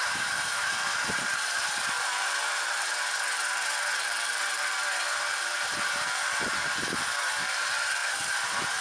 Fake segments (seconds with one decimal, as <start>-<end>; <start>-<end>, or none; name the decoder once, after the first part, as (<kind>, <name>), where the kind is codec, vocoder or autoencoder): 0.0-8.8 (vocoder, BigVGAN v2)